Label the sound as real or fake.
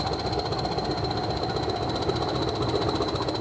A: real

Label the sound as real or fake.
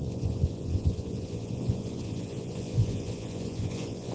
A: fake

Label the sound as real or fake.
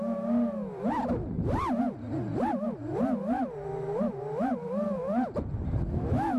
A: real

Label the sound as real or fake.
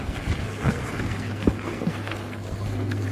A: fake